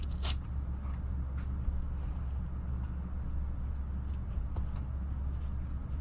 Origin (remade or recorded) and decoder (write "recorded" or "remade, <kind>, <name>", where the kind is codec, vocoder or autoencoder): recorded